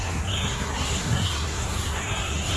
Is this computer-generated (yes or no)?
yes